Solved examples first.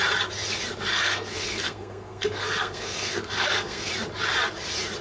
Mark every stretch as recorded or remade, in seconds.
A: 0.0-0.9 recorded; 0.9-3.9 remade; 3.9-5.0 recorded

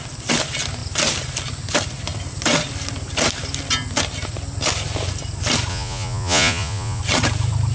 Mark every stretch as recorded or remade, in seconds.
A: 0.0-5.7 recorded; 5.7-7.0 remade; 7.0-7.7 recorded

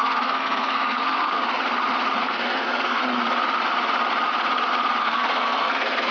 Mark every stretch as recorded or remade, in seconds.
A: 0.0-1.4 remade; 1.4-2.2 recorded; 2.2-3.0 remade; 3.0-5.0 recorded; 5.0-6.1 remade